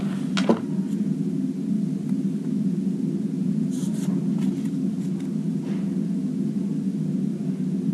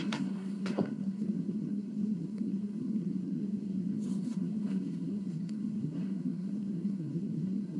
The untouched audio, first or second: first